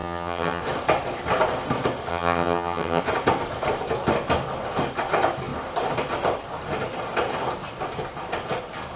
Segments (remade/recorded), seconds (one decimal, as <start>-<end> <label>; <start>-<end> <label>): 0.0-0.6 remade; 0.6-2.1 recorded; 2.1-3.0 remade; 3.0-9.0 recorded